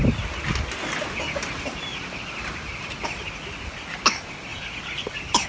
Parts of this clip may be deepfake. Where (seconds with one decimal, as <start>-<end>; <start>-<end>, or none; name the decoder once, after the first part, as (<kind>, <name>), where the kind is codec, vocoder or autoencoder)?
4.5-5.5 (vocoder, BigVGAN v2)

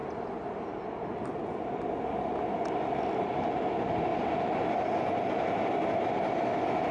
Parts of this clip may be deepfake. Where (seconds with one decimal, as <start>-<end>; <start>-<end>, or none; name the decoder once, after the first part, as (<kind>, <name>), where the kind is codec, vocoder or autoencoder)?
0.0-0.8 (vocoder, BigVGAN v2); 1.3-2.6

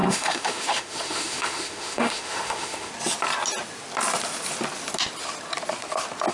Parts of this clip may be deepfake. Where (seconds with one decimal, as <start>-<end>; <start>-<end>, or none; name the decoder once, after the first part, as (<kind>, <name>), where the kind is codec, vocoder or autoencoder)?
0.0-2.9 (autoencoder, DAC-VAE)

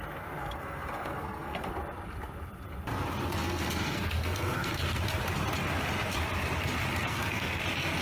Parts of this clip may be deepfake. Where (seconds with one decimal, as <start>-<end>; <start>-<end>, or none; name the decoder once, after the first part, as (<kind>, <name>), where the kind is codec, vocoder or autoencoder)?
0.4-1.7 (codec, SNAC); 3.4-5.0; 6.9-7.6

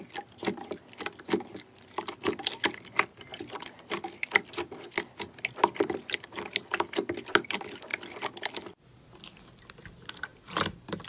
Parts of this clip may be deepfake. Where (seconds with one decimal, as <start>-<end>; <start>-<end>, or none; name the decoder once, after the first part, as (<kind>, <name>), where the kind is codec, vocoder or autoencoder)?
none

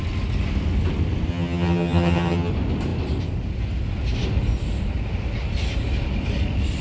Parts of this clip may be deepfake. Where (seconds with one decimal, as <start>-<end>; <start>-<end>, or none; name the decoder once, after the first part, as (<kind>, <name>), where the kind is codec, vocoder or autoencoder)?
1.3-2.5 (vocoder, HiFi-GAN)

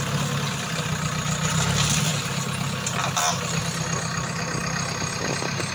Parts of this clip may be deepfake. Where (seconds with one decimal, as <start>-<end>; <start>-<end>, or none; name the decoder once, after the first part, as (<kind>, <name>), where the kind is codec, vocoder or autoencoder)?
none

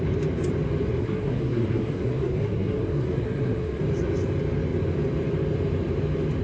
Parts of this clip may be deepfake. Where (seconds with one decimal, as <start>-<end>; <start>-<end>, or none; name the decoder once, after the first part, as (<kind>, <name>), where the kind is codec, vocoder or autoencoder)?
1.0-3.8 (codec, SNAC)